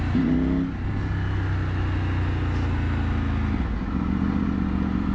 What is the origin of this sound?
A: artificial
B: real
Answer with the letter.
B